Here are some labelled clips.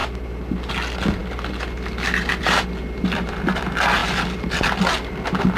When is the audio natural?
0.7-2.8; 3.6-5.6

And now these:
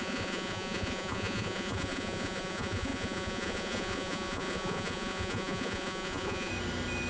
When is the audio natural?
6.5-7.1

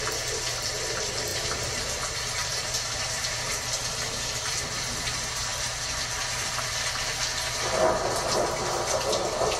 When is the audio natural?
0.0-1.3; 1.8-2.4; 3.5-9.6

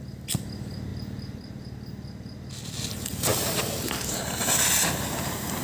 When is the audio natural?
0.0-5.6

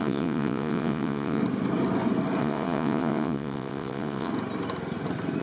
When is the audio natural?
1.4-2.4; 4.3-5.4

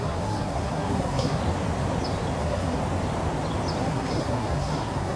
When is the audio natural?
1.4-2.4; 2.8-3.8